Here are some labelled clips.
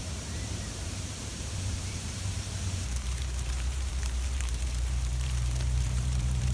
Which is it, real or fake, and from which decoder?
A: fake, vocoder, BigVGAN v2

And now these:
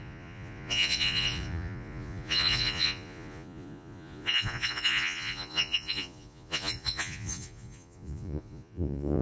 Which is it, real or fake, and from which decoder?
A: fake, vocoder, Vocos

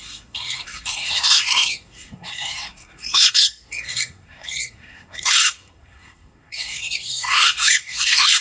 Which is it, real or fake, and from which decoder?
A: fake, codec, SNAC